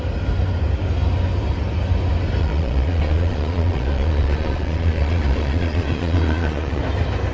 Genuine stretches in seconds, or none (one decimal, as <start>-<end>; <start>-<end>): 0.0-2.4; 6.8-7.3